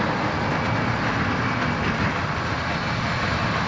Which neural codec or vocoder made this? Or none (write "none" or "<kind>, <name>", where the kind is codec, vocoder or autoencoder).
none